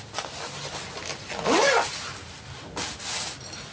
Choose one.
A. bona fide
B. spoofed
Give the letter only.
A